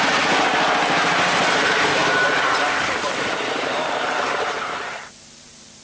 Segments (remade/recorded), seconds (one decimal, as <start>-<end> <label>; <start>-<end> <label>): 0.0-5.8 remade